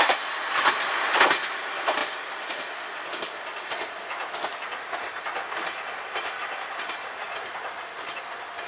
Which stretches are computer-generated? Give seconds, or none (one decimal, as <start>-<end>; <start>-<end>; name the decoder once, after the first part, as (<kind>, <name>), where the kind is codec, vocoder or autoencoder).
none